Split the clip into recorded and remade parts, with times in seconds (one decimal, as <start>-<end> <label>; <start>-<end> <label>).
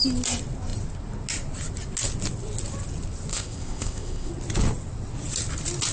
0.0-3.3 recorded; 3.3-4.3 remade; 4.3-5.9 recorded